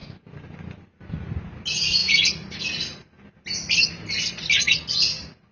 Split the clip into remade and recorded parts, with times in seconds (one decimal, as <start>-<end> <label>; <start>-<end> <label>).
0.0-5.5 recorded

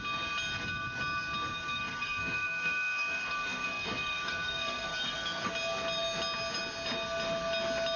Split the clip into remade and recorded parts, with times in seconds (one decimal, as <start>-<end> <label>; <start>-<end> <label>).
0.0-1.5 recorded; 1.5-5.5 remade; 5.5-8.0 recorded

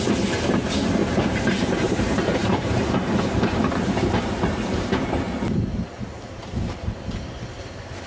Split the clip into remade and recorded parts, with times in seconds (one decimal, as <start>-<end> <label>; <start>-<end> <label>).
0.0-1.0 recorded; 1.0-5.2 remade; 5.2-5.7 recorded; 5.7-6.9 remade; 6.9-8.1 recorded

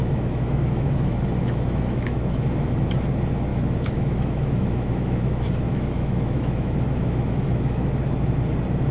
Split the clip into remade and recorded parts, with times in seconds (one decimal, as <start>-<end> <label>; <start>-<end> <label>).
0.0-2.4 remade; 2.4-3.5 recorded; 3.5-7.9 remade; 7.9-8.9 recorded

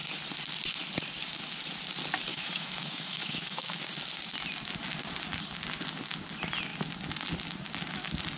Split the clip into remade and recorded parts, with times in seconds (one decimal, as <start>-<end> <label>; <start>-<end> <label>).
0.0-2.3 recorded; 2.3-3.8 remade; 3.8-8.4 recorded